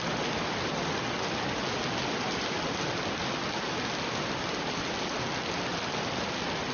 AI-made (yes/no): no